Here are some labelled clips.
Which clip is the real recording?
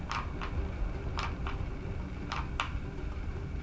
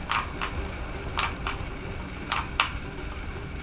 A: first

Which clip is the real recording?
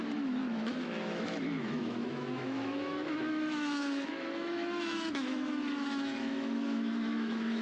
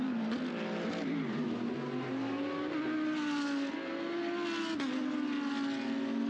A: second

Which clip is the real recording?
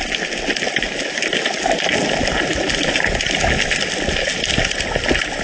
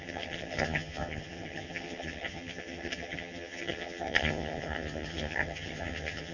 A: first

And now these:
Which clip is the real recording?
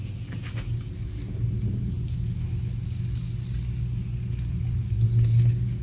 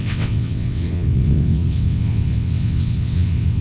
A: first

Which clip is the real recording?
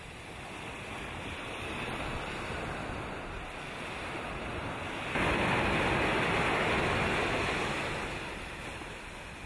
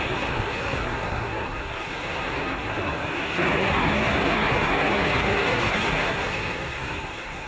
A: first